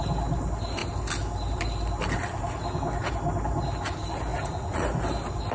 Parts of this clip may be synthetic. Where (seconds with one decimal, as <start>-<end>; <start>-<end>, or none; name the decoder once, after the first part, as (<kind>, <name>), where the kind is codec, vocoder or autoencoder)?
4.3-5.0 (vocoder, Vocos)

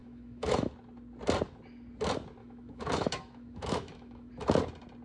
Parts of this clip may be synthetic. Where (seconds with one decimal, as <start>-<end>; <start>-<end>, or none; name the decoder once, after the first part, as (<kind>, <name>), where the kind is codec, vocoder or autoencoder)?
0.0-0.7 (autoencoder, DAC-VAE); 2.4-4.3